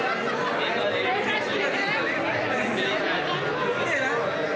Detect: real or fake real